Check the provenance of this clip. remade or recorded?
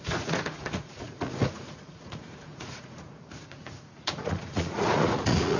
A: remade